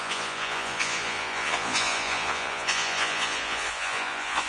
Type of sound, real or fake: fake